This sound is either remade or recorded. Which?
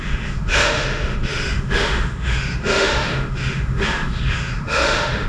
remade